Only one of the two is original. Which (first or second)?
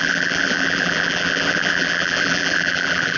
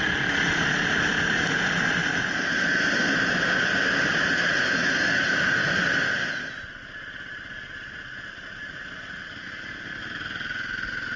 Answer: second